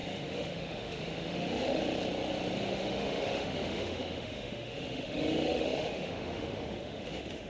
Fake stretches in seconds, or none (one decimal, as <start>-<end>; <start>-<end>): 0.0-1.8; 2.7-7.5